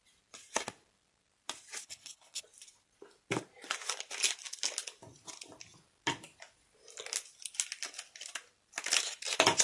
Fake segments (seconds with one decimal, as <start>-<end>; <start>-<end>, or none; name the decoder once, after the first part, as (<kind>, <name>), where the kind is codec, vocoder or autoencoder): 1.8-2.4 (codec, HILCodec)